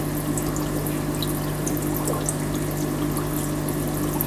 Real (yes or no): yes